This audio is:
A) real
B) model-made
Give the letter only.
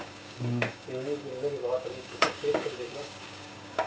B